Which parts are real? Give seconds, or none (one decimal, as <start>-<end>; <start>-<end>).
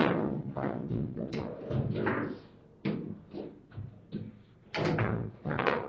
1.5-5.0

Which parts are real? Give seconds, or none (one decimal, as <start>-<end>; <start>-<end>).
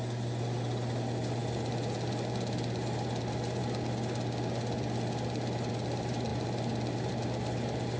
0.0-8.0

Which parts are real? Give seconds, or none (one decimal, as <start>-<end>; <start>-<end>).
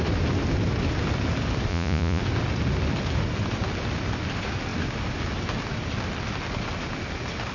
0.0-1.7; 2.2-7.5